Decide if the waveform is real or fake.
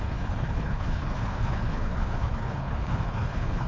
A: fake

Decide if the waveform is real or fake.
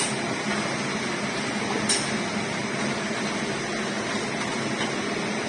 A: real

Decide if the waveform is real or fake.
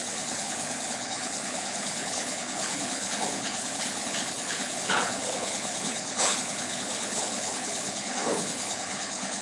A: fake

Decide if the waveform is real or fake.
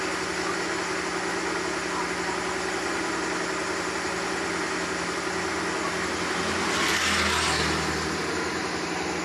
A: real